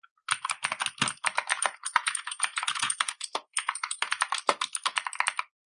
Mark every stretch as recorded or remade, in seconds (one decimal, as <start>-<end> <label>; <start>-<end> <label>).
0.0-1.5 recorded; 1.5-4.2 remade; 4.2-5.7 recorded